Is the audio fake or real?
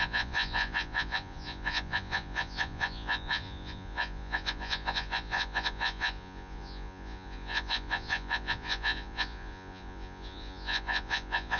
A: fake